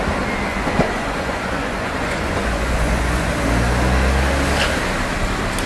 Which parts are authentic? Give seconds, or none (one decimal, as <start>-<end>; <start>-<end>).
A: 0.0-0.5; 3.3-5.7